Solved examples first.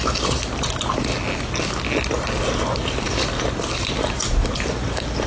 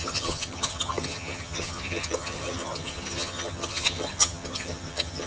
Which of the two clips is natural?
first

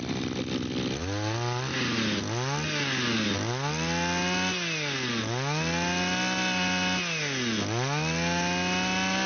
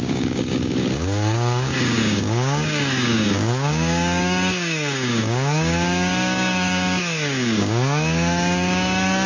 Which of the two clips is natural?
first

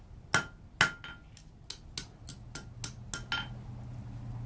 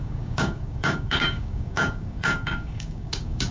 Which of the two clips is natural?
first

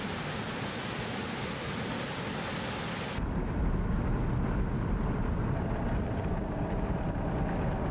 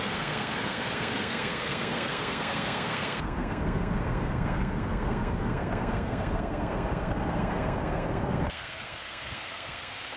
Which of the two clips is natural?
first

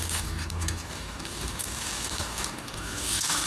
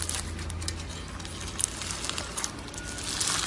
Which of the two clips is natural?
second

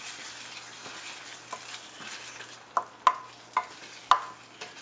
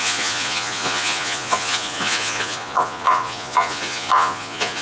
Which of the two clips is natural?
first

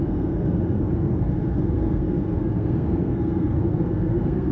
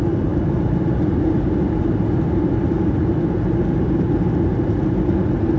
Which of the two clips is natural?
second